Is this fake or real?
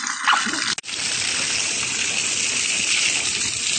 real